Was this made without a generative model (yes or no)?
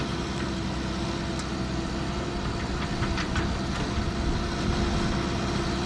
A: yes